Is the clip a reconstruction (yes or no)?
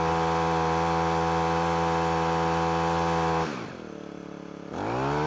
no